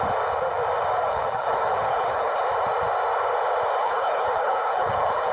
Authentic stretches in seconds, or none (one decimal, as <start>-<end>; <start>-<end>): 0.0-1.0; 2.4-3.8